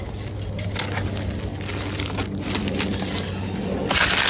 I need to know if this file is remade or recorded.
recorded